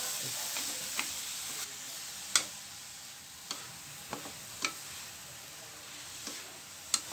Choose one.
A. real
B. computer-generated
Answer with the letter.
A